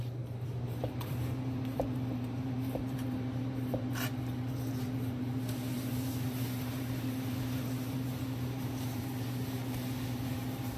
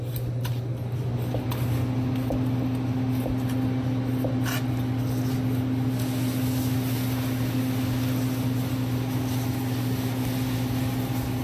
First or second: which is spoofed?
first